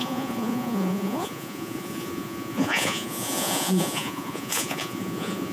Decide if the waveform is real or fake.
fake